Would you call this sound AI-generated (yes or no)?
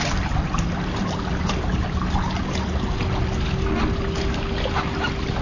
no